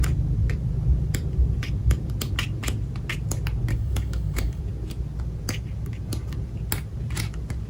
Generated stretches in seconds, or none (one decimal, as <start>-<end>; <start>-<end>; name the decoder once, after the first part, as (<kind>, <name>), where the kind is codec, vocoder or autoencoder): 3.7-4.6 (codec, DAC)

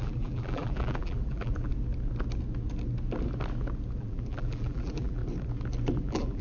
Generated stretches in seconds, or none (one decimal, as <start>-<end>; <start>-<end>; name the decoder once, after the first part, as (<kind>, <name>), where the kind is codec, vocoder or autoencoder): 0.0-1.7 (vocoder, BigVGAN v2); 4.0-5.2; 6.0-6.4

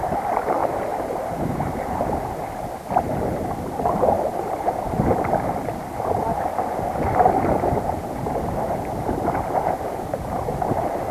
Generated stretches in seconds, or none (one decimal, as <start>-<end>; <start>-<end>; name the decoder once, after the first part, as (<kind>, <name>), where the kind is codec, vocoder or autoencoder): none

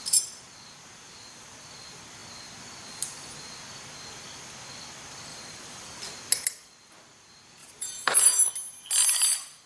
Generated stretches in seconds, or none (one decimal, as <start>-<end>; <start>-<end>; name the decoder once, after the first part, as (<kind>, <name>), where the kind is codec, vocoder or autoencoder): 5.3-6.0 (vocoder, BigVGAN v2); 7.6-8.5